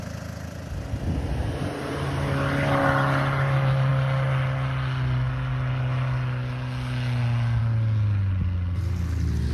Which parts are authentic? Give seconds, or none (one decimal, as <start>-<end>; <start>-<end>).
0.0-9.5